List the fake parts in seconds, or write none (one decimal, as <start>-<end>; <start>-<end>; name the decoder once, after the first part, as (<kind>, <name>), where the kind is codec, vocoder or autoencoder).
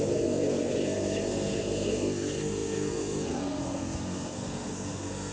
0.0-5.3 (codec, SNAC)